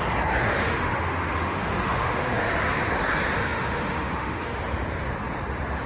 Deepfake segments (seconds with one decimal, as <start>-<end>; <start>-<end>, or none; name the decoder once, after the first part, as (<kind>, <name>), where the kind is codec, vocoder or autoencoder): 0.4-2.5 (autoencoder, DAC-VAE); 3.4-4.6